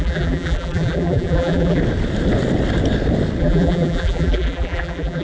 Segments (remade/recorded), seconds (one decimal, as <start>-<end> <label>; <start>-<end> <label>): 0.0-1.8 remade; 1.8-3.4 recorded; 3.4-5.2 remade